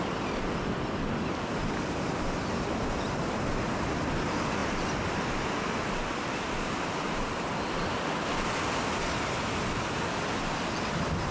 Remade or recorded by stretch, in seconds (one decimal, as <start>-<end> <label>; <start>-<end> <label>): 0.0-11.3 recorded